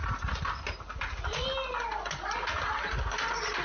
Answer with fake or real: real